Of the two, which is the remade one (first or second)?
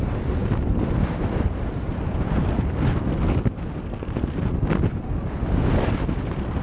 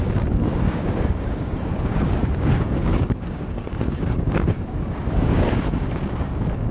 second